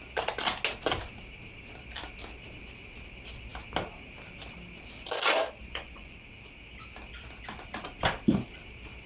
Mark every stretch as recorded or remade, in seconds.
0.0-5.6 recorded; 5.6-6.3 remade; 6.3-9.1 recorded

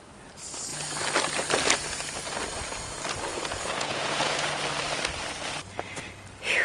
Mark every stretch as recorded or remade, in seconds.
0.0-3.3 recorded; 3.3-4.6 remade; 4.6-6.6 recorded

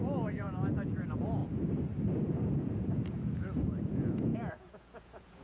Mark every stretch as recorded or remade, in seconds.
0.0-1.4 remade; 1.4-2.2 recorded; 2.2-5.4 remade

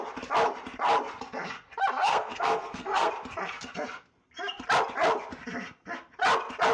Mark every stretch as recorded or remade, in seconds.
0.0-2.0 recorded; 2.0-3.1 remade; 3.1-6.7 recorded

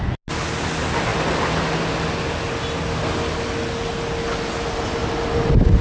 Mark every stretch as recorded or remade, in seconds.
0.0-5.8 recorded